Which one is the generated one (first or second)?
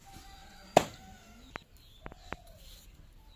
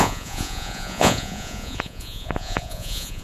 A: second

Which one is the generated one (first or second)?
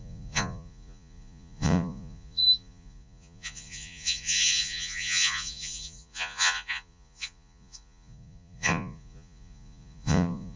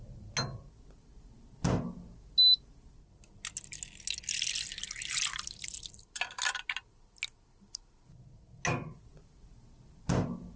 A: first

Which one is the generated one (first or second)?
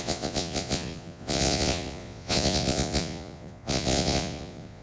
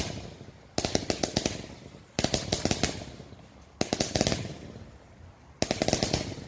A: first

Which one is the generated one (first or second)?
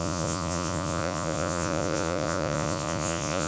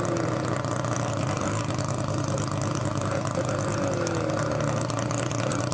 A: first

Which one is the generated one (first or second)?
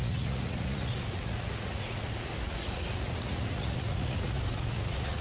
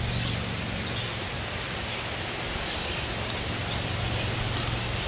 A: first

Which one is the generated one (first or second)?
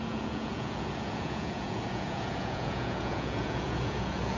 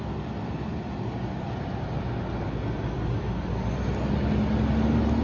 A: first